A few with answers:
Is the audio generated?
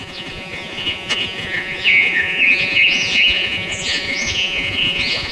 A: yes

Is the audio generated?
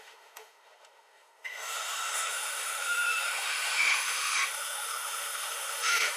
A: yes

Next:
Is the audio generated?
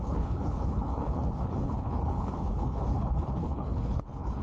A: yes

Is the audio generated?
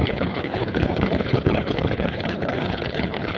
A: yes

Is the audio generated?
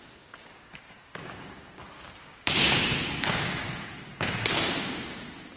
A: yes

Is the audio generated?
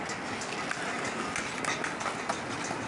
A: no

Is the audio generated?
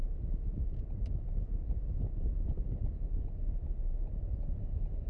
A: no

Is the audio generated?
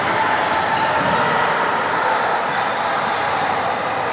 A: yes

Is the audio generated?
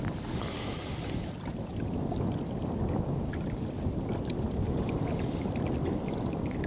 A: no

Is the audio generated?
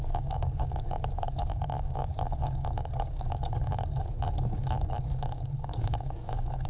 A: yes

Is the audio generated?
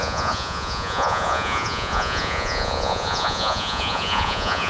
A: yes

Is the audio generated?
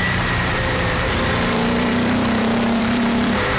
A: yes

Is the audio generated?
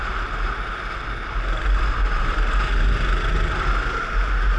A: no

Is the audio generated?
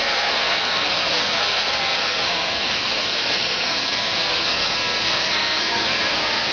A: yes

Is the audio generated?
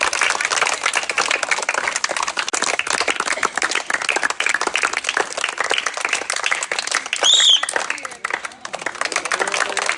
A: no